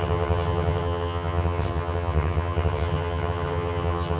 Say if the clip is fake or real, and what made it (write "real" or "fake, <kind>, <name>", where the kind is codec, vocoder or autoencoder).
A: fake, vocoder, HiFi-GAN